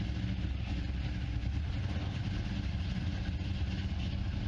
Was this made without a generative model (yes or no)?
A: yes